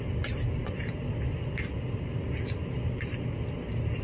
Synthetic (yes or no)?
no